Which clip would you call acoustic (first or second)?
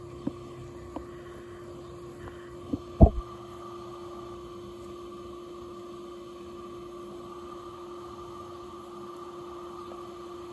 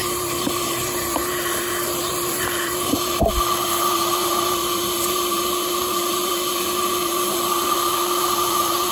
first